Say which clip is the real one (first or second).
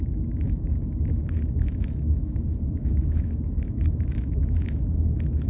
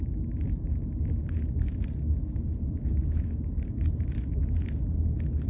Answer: second